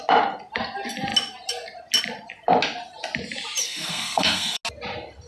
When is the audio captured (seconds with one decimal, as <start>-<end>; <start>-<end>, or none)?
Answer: 0.0-3.6; 4.6-5.3